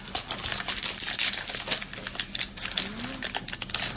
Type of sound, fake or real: real